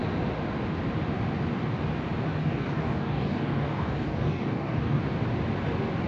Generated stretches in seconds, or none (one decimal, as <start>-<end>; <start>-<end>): 2.4-5.0